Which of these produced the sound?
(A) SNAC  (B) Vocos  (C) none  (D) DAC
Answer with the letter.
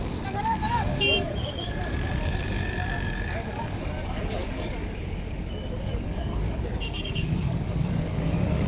D